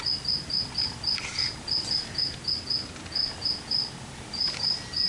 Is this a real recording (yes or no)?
yes